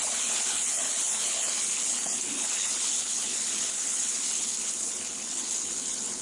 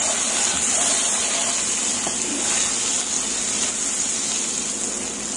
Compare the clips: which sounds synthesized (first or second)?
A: first